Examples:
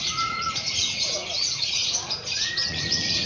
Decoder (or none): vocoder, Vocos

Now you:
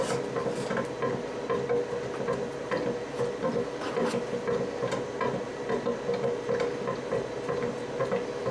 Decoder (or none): none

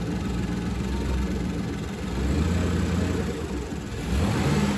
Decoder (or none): none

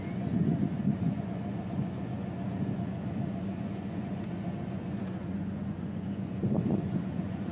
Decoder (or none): vocoder, Vocos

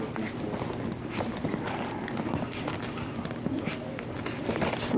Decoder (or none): none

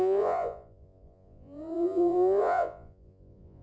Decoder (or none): vocoder, Vocos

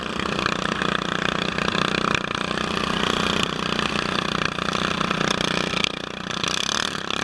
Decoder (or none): none